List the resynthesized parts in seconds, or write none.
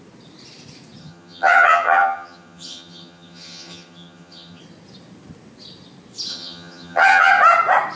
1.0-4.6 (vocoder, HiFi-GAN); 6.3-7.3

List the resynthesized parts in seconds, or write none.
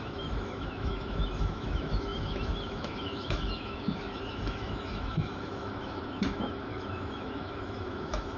0.0-8.4 (autoencoder, DAC-VAE)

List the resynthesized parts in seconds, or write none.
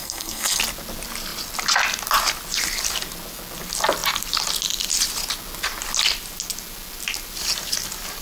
0.0-0.6 (codec, SNAC)